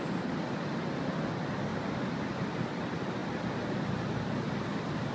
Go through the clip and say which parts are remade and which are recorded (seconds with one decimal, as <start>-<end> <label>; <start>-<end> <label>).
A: 0.0-1.7 recorded; 1.7-2.6 remade; 2.6-5.1 recorded